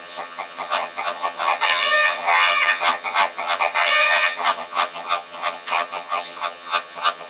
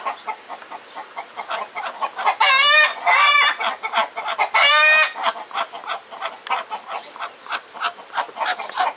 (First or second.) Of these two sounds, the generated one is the first